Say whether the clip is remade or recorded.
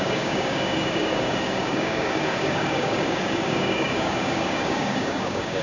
remade